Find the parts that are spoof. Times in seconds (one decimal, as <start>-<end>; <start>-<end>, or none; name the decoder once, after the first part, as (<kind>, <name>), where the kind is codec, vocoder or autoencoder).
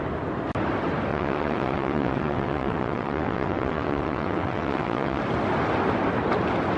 1.1-5.2 (vocoder, WaveNeXt)